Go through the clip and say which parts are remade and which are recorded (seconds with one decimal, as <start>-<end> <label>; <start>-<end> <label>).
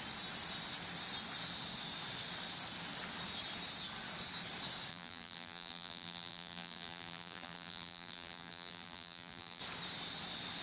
0.0-4.9 recorded; 4.9-9.6 remade; 9.6-10.6 recorded